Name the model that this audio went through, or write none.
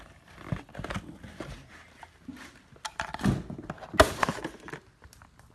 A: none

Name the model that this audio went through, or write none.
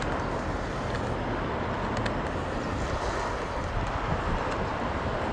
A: none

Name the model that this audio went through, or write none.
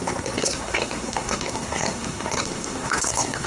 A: codec, SNAC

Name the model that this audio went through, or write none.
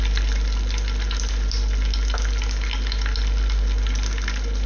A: none